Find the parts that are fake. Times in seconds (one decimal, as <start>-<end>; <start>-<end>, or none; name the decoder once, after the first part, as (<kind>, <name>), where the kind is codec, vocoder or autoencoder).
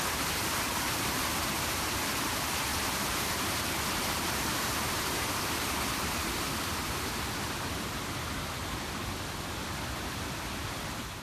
2.7-7.3 (vocoder, BigVGAN v2)